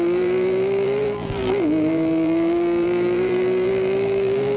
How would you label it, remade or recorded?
remade